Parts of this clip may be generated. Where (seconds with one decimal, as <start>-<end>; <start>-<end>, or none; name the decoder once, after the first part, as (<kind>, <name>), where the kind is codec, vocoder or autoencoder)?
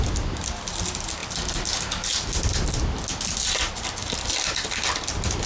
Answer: none